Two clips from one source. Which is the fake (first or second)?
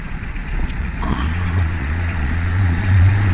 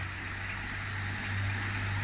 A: first